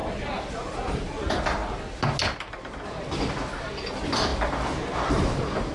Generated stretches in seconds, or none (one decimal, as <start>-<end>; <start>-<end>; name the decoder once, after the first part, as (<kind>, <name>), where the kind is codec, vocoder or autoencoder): none